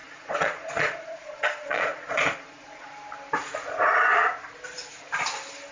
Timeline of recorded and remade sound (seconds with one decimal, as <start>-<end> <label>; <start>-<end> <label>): 0.0-2.9 remade; 2.9-5.7 recorded